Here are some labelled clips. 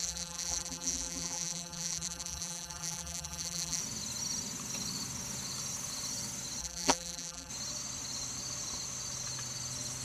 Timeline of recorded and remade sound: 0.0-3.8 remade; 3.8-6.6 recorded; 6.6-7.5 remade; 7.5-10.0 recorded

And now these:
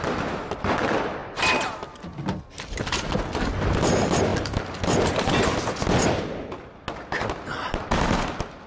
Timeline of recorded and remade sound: 0.0-8.7 recorded

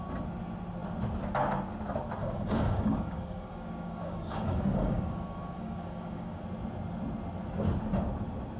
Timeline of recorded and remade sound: 0.0-2.2 recorded; 2.2-6.4 remade; 6.4-8.6 recorded

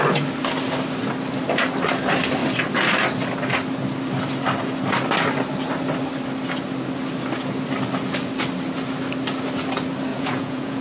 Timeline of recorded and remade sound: 0.0-10.1 recorded; 10.1-10.8 remade

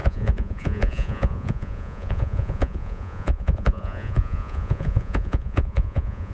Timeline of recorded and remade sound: 0.0-6.3 remade